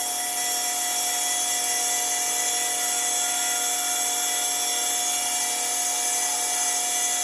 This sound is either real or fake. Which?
real